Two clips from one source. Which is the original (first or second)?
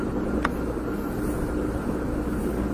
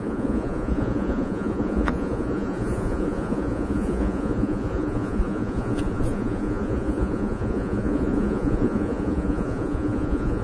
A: first